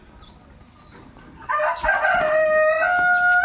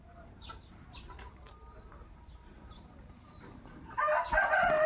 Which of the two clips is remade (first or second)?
second